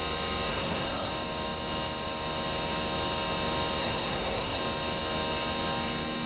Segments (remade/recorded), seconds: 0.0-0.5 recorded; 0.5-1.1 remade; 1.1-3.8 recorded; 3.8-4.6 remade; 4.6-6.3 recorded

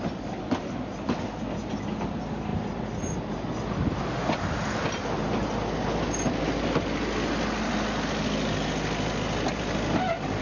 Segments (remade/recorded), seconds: 0.0-10.4 recorded

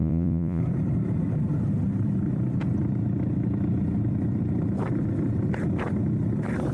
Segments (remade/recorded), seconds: 0.0-0.6 remade; 0.6-6.7 recorded